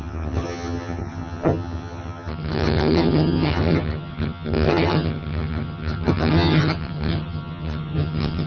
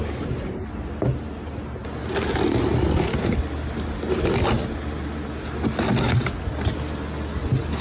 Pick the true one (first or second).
second